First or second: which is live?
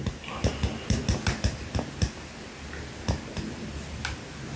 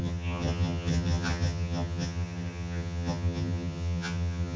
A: first